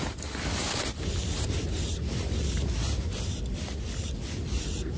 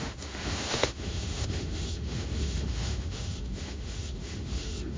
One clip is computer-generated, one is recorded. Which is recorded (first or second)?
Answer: first